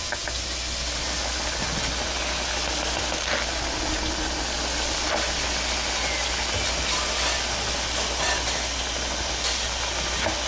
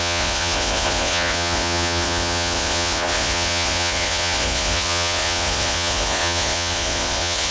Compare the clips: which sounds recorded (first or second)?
first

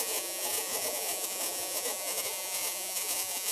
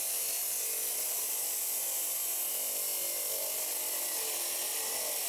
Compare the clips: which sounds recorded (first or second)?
second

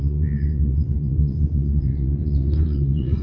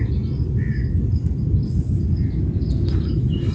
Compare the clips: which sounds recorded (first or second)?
second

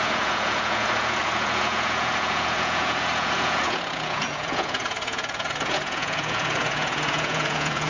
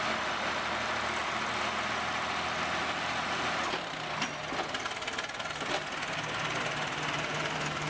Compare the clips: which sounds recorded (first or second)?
second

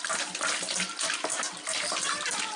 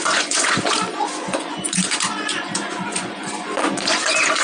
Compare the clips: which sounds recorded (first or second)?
first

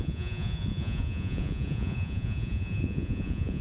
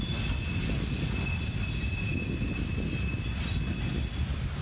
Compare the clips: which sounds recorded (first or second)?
second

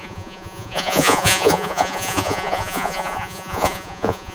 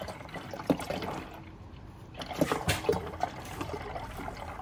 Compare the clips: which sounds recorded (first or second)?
second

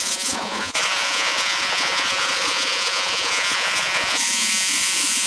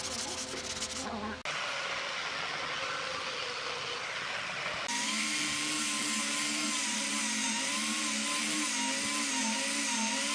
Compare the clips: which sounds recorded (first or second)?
second